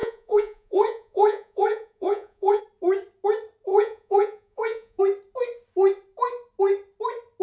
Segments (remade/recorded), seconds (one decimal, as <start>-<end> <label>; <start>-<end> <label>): 0.0-2.6 remade; 2.6-3.7 recorded; 3.7-5.0 remade; 5.0-7.4 recorded